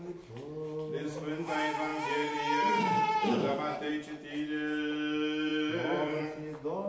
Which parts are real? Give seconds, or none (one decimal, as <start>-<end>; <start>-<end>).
0.0-6.9